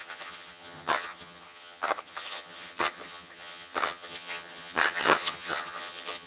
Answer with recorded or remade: remade